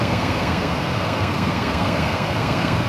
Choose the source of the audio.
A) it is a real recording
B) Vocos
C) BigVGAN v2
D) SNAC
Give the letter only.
D